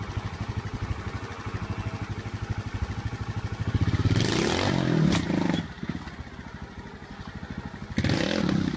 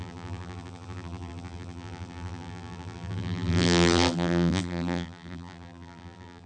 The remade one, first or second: second